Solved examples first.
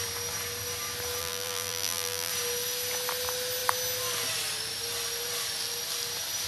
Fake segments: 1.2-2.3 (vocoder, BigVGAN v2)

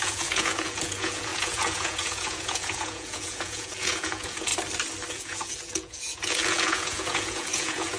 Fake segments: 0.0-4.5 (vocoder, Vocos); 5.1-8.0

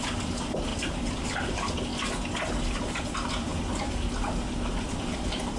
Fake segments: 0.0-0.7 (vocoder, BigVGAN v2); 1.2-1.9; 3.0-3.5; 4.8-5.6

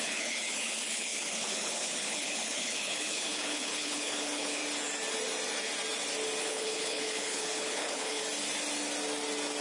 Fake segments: 0.0-4.6 (codec, HILCodec); 6.4-8.2